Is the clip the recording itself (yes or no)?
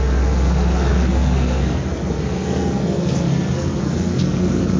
no